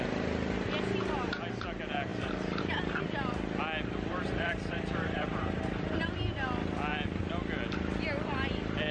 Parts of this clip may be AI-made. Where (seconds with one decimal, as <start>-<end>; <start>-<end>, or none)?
2.1-2.6; 4.1-6.0